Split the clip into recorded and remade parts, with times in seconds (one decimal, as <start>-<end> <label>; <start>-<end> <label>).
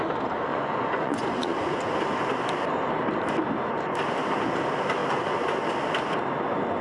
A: 0.0-0.5 recorded; 0.5-1.8 remade; 1.8-6.8 recorded